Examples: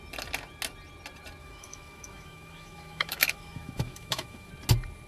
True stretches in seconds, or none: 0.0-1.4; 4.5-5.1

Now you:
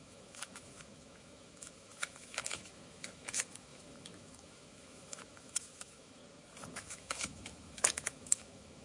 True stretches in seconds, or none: 6.2-6.7

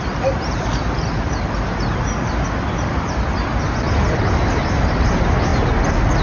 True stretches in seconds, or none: 0.0-6.2

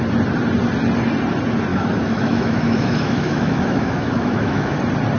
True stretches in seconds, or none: 0.0-1.7; 4.8-5.2

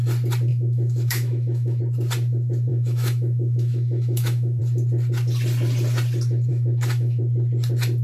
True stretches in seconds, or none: 0.0-0.5; 1.8-2.7; 4.6-6.5; 7.2-8.0

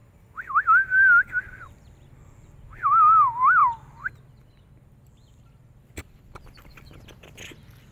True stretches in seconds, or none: 0.0-7.9

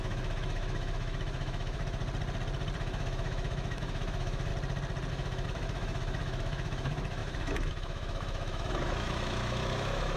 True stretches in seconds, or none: 2.0-2.8; 4.5-5.1

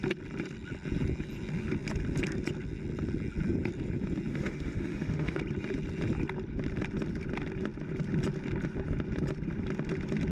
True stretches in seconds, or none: 0.0-4.3; 5.4-10.3